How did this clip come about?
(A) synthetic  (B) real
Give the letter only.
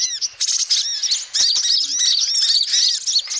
B